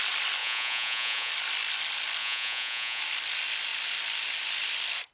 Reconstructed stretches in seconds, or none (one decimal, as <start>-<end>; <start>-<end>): 0.4-1.3; 2.2-3.0

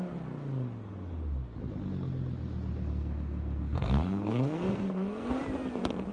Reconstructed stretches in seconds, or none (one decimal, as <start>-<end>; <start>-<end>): 2.9-5.4

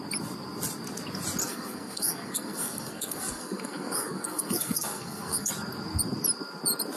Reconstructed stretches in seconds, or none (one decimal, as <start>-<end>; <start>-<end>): 1.4-5.5

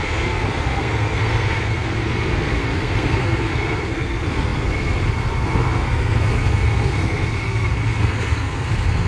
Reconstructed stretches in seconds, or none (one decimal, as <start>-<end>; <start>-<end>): 0.0-9.1

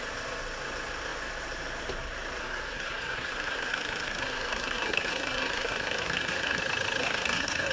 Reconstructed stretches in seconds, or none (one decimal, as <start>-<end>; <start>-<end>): 2.4-6.6; 7.0-7.7

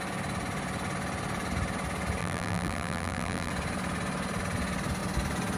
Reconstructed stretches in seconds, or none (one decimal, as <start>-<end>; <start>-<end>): 2.2-3.5

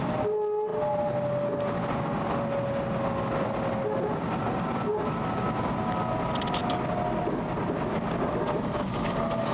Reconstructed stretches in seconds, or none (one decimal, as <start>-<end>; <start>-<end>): none

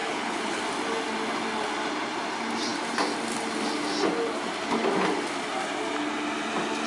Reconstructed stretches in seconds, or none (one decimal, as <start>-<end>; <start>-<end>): 0.0-0.6